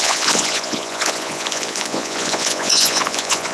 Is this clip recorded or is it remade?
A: remade